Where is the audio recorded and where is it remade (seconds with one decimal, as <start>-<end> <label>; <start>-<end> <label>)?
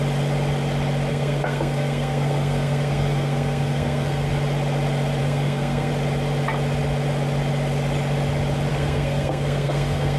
0.0-1.1 recorded; 1.1-4.3 remade; 4.3-5.2 recorded; 5.2-5.9 remade; 5.9-8.7 recorded; 8.7-10.2 remade